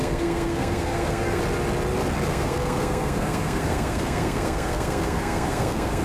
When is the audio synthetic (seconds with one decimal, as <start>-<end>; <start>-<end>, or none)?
0.0-1.4; 2.3-6.0